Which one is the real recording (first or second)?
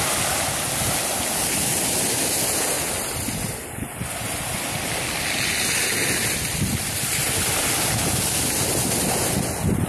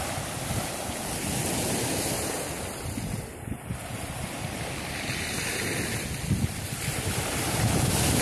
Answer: first